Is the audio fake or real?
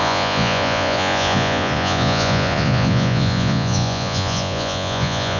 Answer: fake